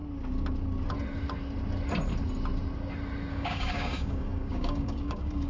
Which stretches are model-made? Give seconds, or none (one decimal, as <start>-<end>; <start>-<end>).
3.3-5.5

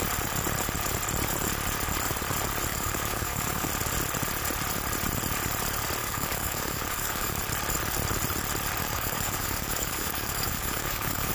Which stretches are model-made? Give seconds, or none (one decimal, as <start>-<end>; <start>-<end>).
2.7-3.7; 6.0-7.4; 8.8-11.3

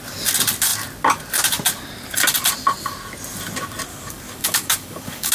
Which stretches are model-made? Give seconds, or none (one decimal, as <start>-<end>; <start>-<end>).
3.9-5.3

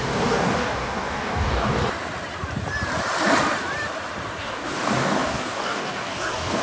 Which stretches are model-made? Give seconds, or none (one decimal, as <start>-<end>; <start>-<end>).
0.0-1.8; 4.4-6.6